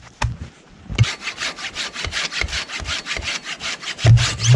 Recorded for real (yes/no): yes